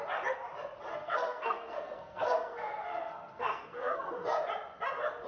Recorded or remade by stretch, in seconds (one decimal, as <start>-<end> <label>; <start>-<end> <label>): 0.0-0.9 recorded; 0.9-4.1 remade; 4.1-5.3 recorded